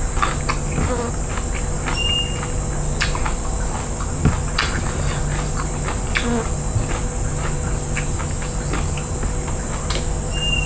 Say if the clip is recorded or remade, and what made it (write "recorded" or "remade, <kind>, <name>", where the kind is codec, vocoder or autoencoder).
recorded